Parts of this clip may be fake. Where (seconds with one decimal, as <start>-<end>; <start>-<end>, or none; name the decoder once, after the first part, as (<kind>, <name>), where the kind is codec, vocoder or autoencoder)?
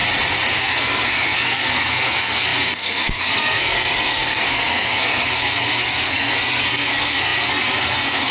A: 0.6-8.3 (codec, SNAC)